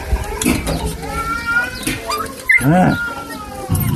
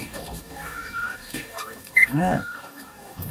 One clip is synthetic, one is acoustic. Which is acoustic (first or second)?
first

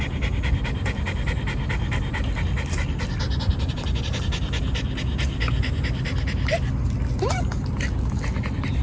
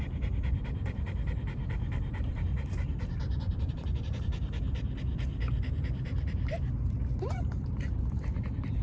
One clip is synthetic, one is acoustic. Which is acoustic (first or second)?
first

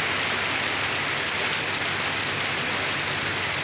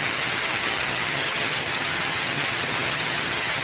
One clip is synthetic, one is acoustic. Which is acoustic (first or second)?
first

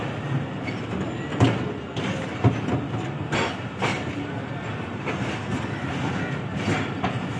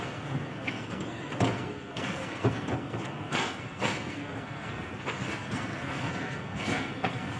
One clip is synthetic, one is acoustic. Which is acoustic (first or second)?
first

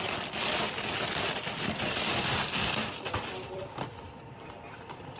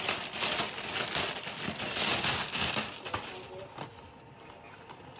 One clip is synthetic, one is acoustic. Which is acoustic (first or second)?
second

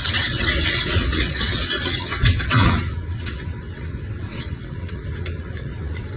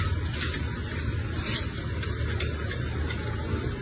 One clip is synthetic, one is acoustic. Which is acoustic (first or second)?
second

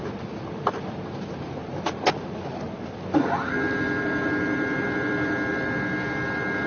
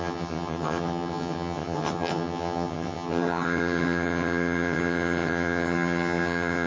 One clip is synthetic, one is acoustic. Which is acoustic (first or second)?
first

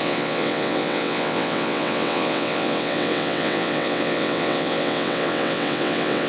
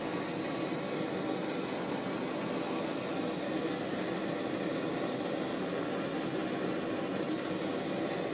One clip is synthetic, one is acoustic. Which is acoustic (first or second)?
second